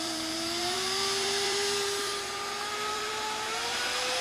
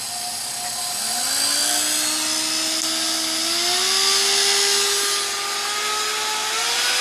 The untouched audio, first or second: second